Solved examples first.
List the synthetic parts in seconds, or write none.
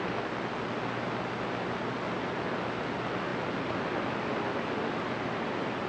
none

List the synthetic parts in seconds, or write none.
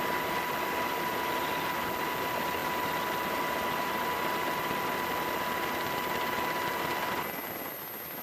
none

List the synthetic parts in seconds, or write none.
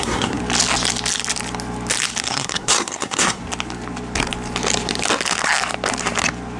0.0-0.4; 2.2-3.4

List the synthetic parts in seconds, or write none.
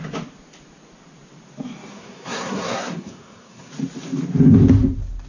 1.9-3.7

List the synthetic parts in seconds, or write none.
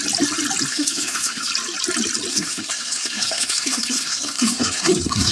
0.7-1.5; 2.3-5.3